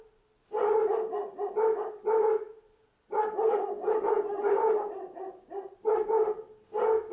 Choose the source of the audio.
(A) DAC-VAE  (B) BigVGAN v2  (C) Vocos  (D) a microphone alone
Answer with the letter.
D